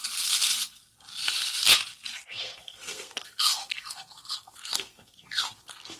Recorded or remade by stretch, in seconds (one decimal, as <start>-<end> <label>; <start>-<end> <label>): 0.0-0.8 remade; 0.8-2.3 recorded; 2.3-6.0 remade

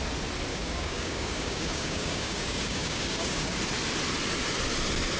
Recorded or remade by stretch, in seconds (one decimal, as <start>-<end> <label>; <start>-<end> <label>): 0.0-0.5 recorded; 0.5-3.6 remade; 3.6-5.2 recorded